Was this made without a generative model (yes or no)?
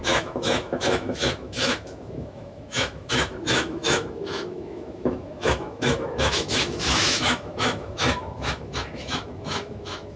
no